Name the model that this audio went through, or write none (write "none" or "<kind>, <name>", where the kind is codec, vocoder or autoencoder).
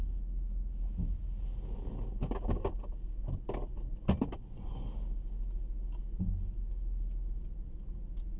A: none